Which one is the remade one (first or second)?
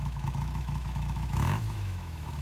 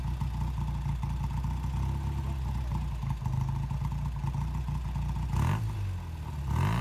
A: first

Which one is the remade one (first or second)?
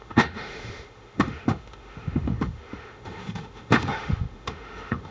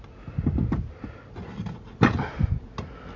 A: first